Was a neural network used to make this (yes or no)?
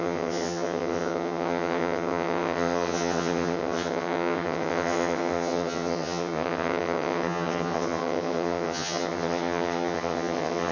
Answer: yes